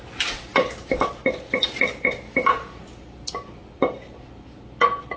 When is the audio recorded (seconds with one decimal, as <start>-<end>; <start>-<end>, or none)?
0.0-0.5; 3.6-5.2